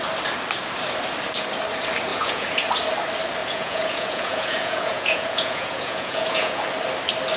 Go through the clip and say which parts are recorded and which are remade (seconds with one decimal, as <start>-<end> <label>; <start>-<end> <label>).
0.0-2.1 recorded; 2.1-2.6 remade; 2.6-3.4 recorded; 3.4-6.6 remade; 6.6-7.4 recorded